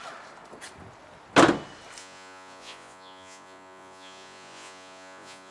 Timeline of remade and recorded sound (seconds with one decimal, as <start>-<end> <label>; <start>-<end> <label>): 0.0-2.0 recorded; 2.0-5.5 remade